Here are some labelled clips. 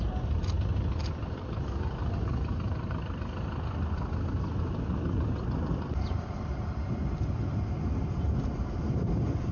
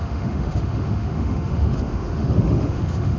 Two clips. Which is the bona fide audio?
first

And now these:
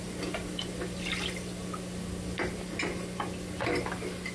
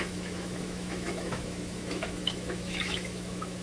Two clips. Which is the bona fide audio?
first